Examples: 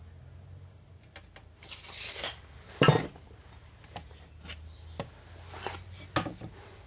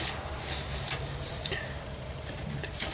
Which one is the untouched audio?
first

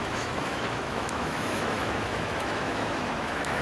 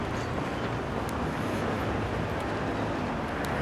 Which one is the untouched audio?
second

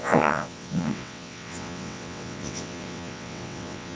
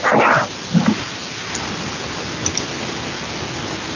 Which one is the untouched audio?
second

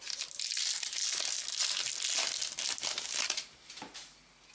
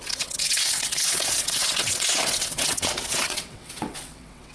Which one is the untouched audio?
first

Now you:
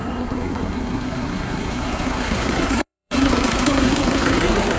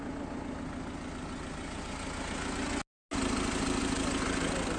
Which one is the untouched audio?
second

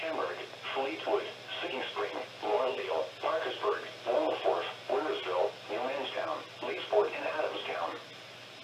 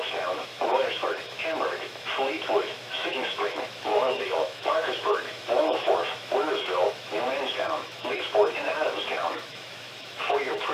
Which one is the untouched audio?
first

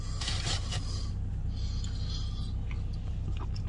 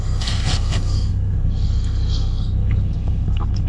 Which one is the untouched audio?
first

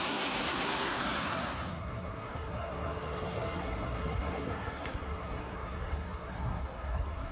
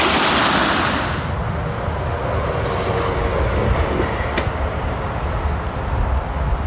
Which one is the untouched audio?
second